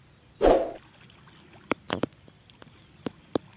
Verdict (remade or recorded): recorded